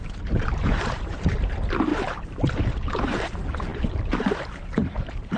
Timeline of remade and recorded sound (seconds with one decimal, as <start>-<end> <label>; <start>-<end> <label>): 0.0-5.4 remade